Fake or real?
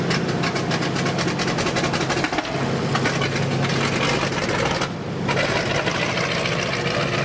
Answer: real